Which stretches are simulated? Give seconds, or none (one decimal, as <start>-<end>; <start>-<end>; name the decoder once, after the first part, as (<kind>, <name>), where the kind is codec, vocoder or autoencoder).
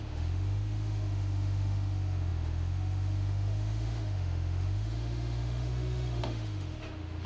0.0-7.3 (autoencoder, DAC-VAE)